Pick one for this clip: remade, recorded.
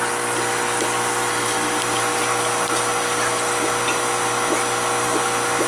recorded